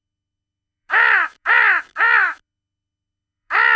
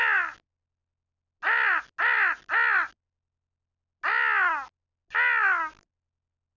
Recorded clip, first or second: second